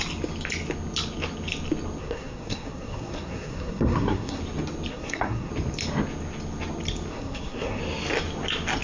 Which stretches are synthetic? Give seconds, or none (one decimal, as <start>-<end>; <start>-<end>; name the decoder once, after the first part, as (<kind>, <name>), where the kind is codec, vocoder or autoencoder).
2.0-4.4 (codec, SNAC); 4.9-5.5; 7.1-7.8